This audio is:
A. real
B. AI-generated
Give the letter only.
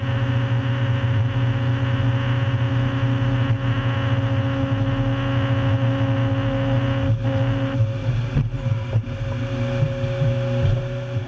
A